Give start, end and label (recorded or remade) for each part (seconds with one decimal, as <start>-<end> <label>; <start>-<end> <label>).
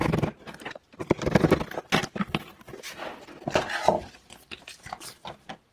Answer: 0.0-5.7 recorded